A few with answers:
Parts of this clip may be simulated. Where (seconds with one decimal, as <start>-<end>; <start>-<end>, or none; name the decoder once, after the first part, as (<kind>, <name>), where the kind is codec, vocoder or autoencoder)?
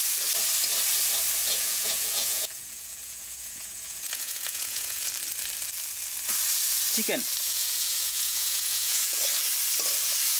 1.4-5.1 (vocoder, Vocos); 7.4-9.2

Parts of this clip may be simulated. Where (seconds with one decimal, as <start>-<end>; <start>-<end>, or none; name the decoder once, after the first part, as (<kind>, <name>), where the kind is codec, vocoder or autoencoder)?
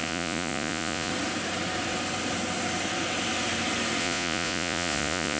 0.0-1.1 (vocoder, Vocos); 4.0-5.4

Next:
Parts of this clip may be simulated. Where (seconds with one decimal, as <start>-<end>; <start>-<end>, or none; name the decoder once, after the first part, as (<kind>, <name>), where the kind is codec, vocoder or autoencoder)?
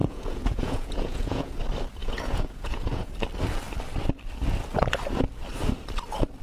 0.0-1.5 (vocoder, Vocos); 2.0-3.1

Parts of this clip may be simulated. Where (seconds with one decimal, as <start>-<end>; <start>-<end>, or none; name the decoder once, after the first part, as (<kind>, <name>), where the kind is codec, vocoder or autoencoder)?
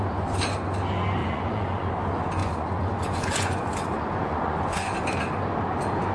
1.2-1.9 (vocoder, Vocos); 2.4-4.9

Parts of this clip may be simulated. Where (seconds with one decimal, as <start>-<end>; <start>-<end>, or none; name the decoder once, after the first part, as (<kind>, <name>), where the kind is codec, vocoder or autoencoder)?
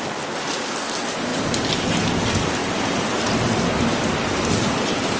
none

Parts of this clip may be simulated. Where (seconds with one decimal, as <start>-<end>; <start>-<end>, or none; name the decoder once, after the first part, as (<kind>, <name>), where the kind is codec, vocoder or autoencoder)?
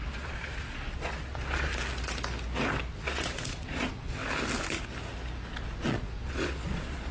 0.0-1.7 (vocoder, Vocos); 2.9-4.2; 5.5-7.1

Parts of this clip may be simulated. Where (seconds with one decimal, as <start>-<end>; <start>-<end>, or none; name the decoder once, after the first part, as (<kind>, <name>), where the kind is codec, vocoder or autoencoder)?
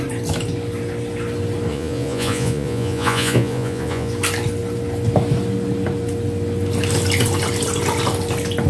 1.7-4.1 (vocoder, Vocos)